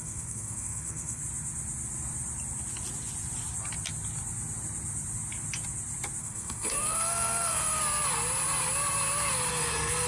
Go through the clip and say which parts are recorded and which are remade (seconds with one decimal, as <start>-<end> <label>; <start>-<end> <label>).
0.0-1.2 remade; 1.2-6.2 recorded; 6.2-7.8 remade; 7.8-9.5 recorded; 9.5-10.1 remade